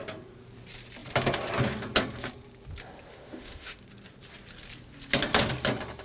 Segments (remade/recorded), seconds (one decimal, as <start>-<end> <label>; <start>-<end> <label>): 0.0-3.1 recorded; 3.1-3.8 remade; 3.8-6.0 recorded